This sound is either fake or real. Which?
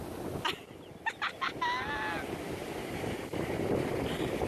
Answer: real